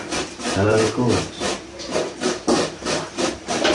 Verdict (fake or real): real